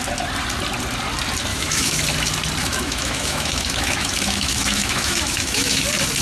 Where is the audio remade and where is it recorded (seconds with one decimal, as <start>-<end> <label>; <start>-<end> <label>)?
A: 0.0-1.5 recorded; 1.5-2.0 remade; 2.0-2.6 recorded; 2.6-5.8 remade; 5.8-6.2 recorded